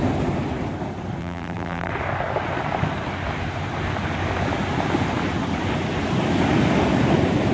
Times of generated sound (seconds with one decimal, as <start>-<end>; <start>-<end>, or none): 1.2-1.9